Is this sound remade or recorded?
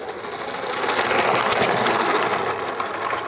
recorded